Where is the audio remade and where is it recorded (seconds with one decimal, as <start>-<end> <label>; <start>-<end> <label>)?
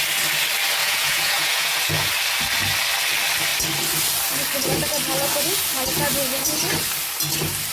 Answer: 0.0-0.8 recorded; 0.8-2.1 remade; 2.1-7.7 recorded